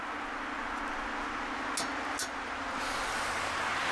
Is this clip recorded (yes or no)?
yes